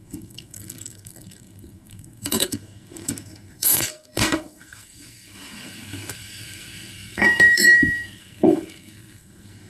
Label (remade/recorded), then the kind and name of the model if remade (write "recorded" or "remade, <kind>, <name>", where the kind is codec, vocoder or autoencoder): remade, codec, SNAC